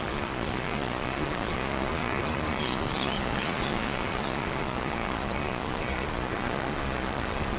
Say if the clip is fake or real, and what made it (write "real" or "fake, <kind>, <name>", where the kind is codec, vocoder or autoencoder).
fake, vocoder, Vocos